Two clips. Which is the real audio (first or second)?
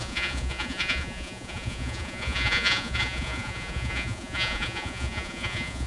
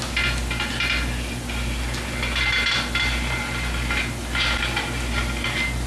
second